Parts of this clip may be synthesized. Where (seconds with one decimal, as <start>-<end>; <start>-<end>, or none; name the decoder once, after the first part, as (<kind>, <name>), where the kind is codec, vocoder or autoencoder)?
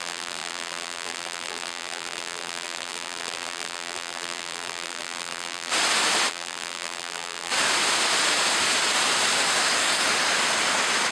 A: 0.0-5.7 (vocoder, BigVGAN v2); 6.3-7.5